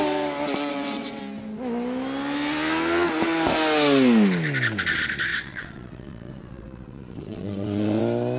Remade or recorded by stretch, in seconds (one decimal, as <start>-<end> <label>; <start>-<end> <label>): 0.0-0.7 recorded; 0.7-1.2 remade; 1.2-5.3 recorded; 5.3-8.0 remade; 8.0-8.4 recorded